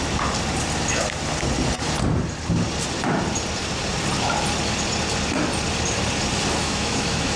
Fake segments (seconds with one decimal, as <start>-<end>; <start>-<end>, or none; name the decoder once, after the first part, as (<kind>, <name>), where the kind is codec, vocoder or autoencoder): 6.6-7.4 (autoencoder, DAC-VAE)